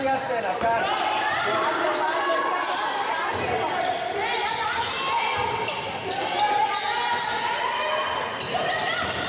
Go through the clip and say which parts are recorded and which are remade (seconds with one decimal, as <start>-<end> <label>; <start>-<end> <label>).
0.0-9.3 recorded